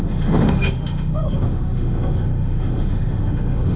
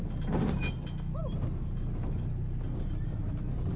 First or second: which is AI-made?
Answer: first